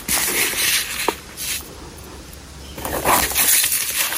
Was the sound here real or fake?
real